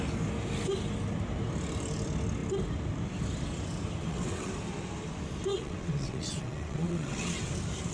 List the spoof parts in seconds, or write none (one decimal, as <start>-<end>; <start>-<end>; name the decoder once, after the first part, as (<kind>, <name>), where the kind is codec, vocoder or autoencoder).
4.0-4.5 (vocoder, WaveNeXt); 5.5-7.5